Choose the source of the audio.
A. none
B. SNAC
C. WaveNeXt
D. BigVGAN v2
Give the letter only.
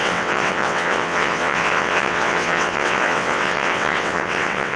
C